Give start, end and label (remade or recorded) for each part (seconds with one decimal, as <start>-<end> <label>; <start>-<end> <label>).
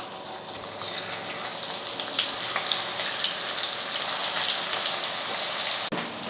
0.0-6.3 recorded